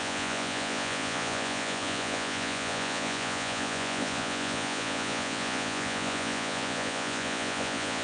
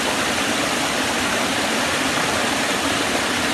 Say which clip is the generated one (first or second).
first